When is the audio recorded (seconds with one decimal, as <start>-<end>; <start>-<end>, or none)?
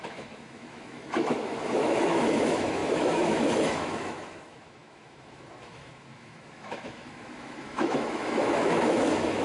none